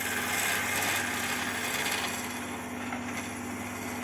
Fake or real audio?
real